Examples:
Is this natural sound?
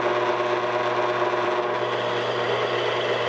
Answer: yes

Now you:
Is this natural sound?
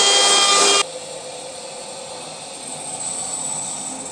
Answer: yes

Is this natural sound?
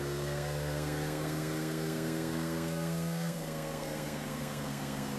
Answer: no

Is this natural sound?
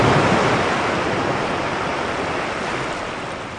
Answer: yes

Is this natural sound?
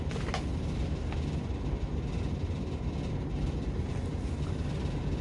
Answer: yes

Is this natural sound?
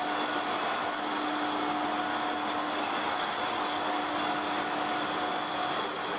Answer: yes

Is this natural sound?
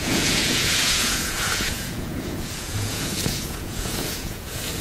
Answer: no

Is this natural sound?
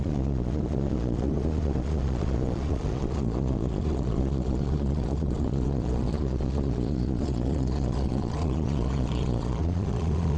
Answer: no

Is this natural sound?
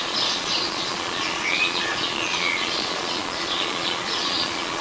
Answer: no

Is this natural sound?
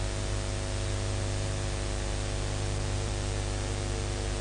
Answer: yes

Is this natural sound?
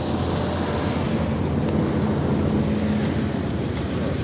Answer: yes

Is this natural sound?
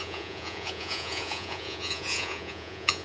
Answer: no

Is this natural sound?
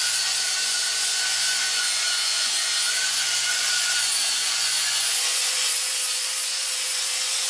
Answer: no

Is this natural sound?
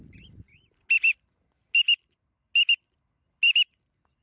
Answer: yes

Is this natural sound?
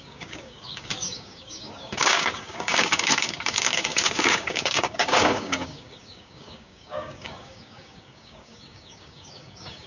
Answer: no